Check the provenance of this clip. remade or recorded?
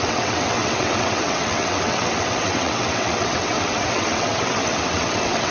remade